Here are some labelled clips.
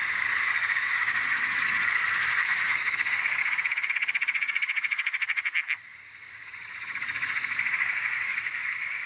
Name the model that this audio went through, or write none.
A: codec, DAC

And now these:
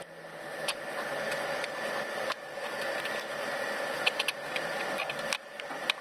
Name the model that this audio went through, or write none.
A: none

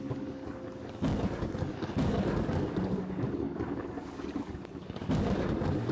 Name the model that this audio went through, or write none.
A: codec, DAC